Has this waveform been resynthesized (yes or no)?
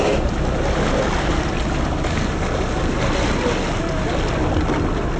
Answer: no